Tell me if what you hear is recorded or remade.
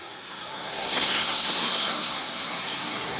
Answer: remade